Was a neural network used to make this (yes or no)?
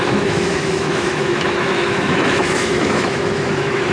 yes